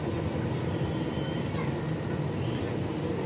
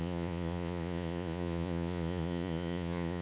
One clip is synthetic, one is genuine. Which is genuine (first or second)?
first